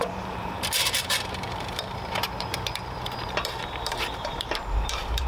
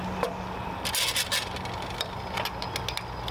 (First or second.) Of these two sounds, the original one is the second